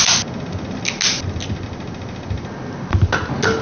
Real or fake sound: real